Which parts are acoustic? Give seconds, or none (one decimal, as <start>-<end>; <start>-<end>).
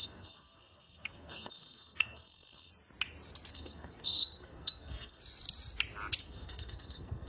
2.7-3.5; 5.2-6.2